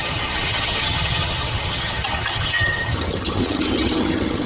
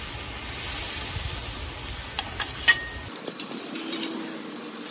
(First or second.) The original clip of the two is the second